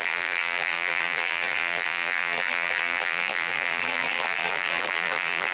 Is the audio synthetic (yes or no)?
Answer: yes